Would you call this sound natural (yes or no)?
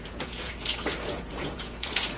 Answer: no